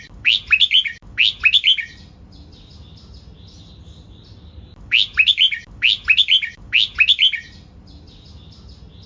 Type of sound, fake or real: real